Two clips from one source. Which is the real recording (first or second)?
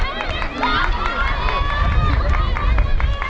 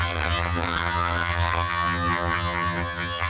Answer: first